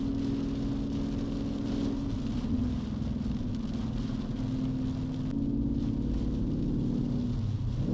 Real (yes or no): yes